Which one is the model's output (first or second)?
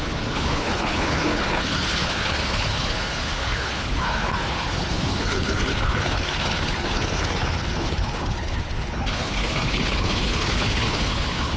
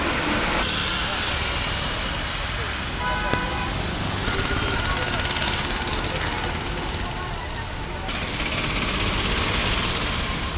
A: first